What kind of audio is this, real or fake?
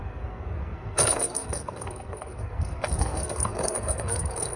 fake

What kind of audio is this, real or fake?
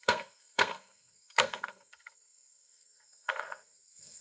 fake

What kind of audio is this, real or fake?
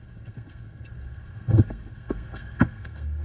fake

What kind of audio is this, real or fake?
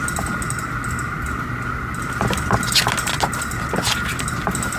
real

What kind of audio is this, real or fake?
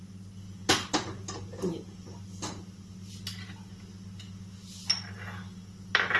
real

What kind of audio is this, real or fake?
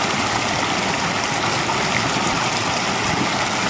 real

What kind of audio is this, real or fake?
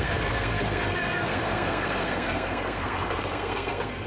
fake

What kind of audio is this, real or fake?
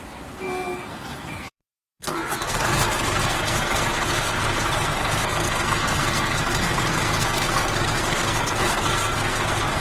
fake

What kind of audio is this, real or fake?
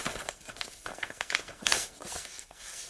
fake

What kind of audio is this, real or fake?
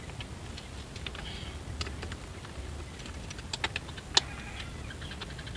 real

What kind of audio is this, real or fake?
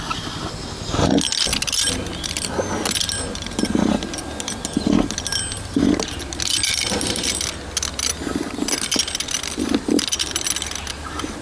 real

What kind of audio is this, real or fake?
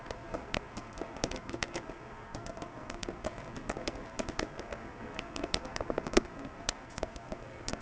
fake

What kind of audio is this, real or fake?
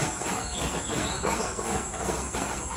fake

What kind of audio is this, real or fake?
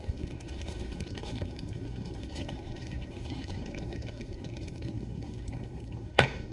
fake